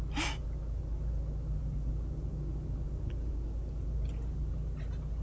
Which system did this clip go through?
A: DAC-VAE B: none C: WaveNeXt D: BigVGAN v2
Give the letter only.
B